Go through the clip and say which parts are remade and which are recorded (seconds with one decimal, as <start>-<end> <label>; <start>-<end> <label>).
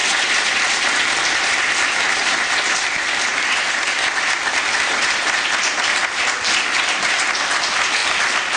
0.0-8.6 recorded